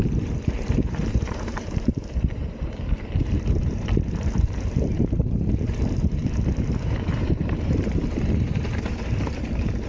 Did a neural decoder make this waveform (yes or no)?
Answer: yes